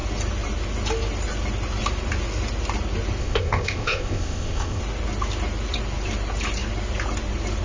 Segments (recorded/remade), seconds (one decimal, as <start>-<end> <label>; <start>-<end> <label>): 0.0-3.2 recorded; 3.2-4.8 remade; 4.8-7.6 recorded